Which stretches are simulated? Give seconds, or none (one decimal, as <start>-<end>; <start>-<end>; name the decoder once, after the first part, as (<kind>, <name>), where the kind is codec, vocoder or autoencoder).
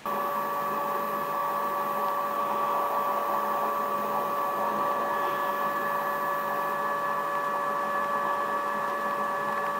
none